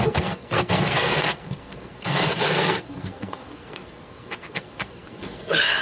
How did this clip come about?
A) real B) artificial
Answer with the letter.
B